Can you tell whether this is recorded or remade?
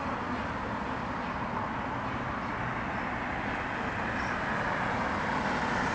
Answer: recorded